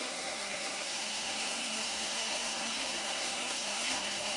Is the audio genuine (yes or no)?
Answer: no